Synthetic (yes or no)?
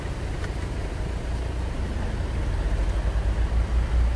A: no